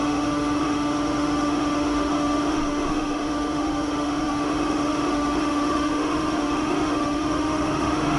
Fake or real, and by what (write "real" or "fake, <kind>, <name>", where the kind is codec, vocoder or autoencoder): fake, autoencoder, DAC-VAE